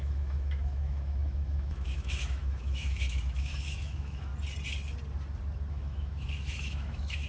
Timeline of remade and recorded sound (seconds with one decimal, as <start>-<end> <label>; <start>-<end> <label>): 0.0-4.3 remade; 4.3-5.7 recorded; 5.7-7.3 remade